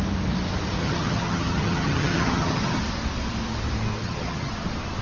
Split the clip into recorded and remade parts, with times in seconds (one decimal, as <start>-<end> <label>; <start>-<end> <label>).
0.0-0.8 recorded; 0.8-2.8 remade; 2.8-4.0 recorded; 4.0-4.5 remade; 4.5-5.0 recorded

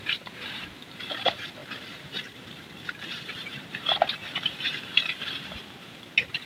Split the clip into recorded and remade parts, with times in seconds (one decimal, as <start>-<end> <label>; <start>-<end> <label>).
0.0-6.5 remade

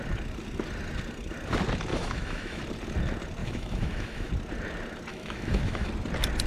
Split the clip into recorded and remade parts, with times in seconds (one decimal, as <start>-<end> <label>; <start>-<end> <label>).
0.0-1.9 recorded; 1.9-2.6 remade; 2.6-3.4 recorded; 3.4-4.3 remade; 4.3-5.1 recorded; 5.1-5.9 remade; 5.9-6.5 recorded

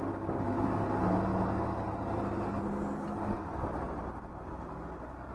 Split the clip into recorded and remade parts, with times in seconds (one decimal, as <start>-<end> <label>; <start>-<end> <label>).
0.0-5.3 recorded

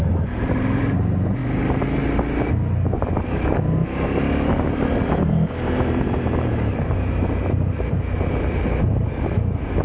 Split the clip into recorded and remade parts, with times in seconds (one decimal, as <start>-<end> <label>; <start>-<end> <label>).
0.0-1.4 remade; 1.4-5.1 recorded; 5.1-9.8 remade